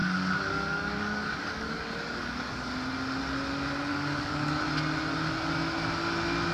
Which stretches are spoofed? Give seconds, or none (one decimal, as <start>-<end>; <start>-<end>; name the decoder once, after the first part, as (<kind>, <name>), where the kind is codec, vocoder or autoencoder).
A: 0.0-2.7 (codec, DAC); 3.9-4.6